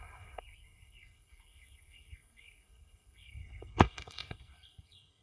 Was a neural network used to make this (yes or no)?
yes